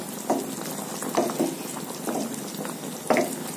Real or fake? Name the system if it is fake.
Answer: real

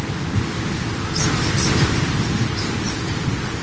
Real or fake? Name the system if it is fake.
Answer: real